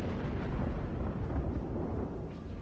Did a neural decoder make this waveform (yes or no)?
no